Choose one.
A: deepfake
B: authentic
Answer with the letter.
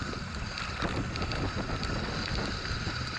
B